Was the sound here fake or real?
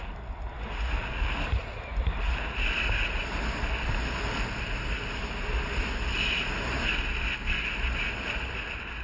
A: real